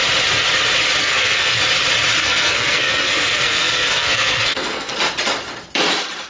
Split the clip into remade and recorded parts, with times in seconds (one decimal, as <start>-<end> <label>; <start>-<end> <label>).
0.0-1.0 recorded; 1.0-1.6 remade; 1.6-2.2 recorded; 2.2-4.9 remade; 4.9-6.3 recorded

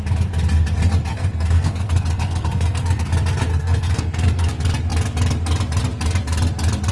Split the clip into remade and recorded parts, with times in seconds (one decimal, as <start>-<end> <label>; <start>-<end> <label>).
0.0-1.1 recorded; 1.1-3.1 remade; 3.1-3.5 recorded; 3.5-4.5 remade; 4.5-6.9 recorded

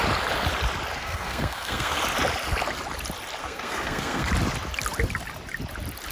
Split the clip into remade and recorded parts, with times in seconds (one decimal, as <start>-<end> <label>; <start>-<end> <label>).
0.0-1.0 recorded; 1.0-2.0 remade; 2.0-3.4 recorded; 3.4-4.3 remade; 4.3-6.1 recorded